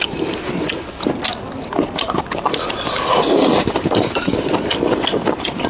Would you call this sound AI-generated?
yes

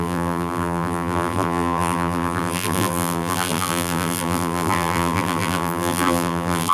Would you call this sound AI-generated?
yes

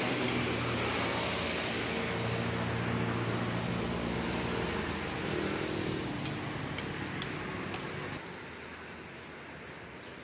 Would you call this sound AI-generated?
no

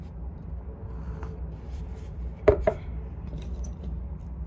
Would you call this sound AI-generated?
yes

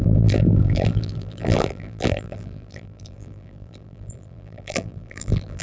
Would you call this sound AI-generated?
yes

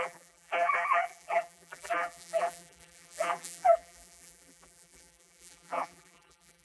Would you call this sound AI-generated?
yes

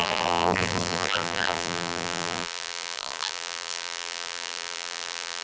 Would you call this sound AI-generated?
yes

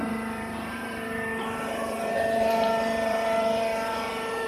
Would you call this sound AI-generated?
yes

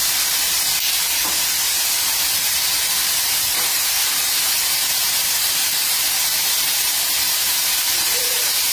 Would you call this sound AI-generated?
yes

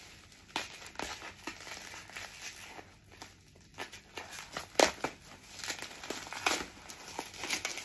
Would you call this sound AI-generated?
no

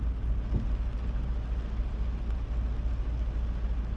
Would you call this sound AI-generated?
no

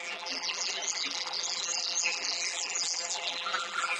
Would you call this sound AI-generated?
yes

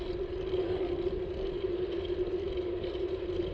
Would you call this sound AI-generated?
no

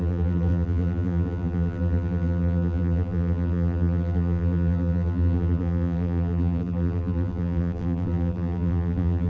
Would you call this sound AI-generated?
yes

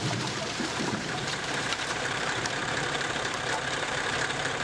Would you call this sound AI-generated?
yes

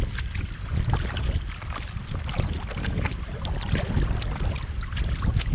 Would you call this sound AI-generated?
no